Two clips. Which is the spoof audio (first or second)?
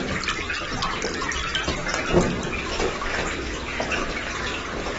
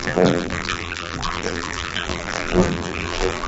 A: second